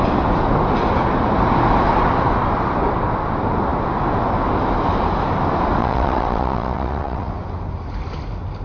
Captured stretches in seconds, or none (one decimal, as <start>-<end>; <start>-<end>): 0.0-5.8; 7.3-8.6